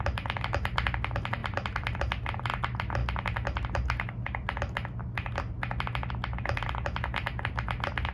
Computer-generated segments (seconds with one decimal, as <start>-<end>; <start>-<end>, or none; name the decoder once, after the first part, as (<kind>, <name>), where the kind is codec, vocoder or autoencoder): none